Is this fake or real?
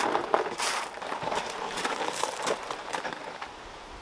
fake